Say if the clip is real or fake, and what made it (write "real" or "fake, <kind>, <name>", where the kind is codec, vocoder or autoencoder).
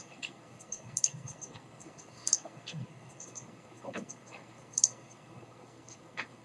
fake, codec, SNAC